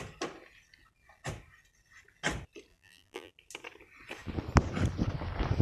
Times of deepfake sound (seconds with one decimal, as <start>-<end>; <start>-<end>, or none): 2.7-3.3

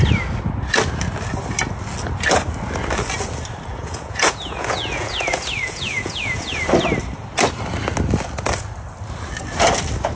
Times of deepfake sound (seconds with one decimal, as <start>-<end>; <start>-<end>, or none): 3.7-6.6

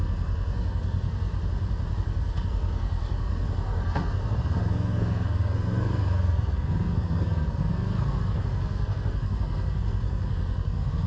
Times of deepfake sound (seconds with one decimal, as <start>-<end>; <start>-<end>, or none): 0.0-1.3; 1.9-11.1

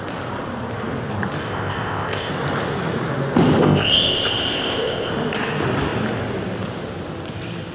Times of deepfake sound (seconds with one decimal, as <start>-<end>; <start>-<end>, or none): 1.4-2.3; 3.6-5.1